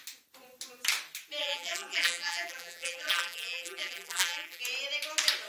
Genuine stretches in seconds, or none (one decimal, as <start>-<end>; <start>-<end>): 0.0-1.4; 4.6-5.5

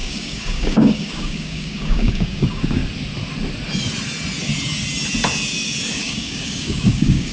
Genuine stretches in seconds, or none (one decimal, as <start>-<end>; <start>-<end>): 2.8-5.9

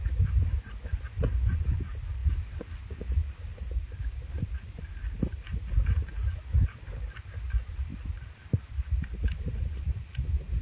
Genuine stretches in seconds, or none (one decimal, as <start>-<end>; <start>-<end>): 0.0-3.5; 5.7-7.9; 9.0-10.6

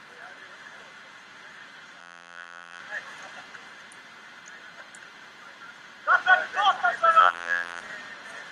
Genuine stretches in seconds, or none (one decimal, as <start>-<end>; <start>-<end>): 0.0-2.0; 2.8-7.2; 7.8-8.5

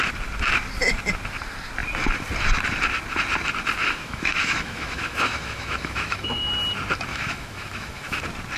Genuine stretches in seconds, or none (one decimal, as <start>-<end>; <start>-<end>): 0.0-3.8; 6.5-7.1; 8.2-8.6

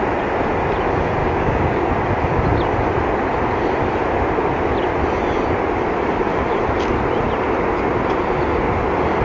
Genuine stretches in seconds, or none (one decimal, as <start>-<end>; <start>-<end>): 0.0-1.2; 1.9-9.2